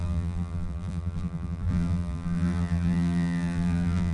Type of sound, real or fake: fake